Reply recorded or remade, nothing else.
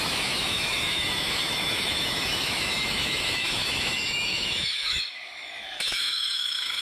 remade